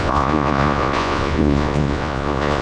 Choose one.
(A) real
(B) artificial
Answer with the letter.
B